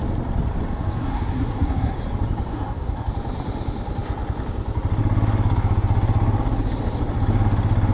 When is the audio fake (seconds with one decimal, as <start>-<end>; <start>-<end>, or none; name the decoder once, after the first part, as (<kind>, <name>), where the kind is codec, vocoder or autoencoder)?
1.0-2.0 (codec, SNAC); 2.5-3.1